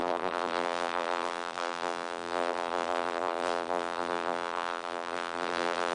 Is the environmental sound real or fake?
fake